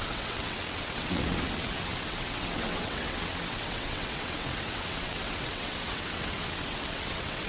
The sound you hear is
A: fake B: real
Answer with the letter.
A